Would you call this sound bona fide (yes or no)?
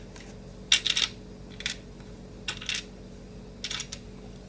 yes